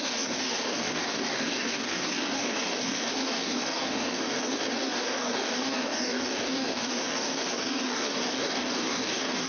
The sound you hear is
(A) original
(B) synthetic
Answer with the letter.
B